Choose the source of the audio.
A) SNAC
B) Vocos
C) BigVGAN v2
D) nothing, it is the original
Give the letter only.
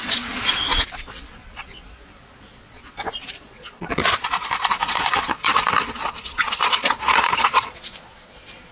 B